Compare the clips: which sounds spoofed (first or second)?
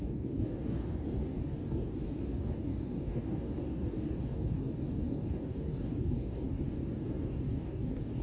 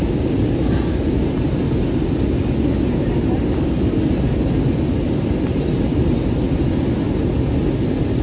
first